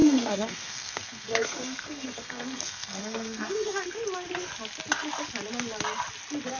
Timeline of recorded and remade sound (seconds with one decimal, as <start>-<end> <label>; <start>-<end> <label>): 0.0-4.0 remade; 4.0-6.6 recorded